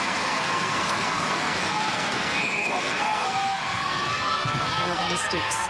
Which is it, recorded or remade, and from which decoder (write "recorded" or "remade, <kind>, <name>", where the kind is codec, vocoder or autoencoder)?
remade, codec, SNAC